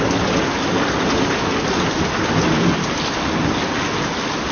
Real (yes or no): yes